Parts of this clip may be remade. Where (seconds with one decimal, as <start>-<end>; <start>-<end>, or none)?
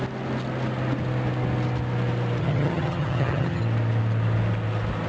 2.4-3.6